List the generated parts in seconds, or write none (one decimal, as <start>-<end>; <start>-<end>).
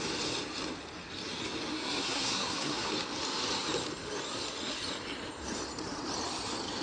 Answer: 1.7-2.9